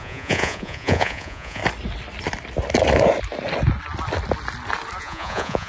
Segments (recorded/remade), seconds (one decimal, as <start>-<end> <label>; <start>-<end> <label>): 0.0-1.6 remade; 1.6-5.0 recorded; 5.0-5.7 remade